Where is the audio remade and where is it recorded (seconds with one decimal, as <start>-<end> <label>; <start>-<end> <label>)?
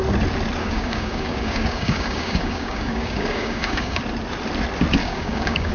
0.0-0.6 recorded; 0.6-4.0 remade; 4.0-5.0 recorded; 5.0-5.7 remade